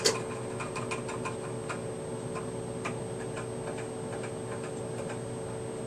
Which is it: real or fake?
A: real